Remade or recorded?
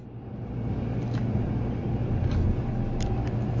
recorded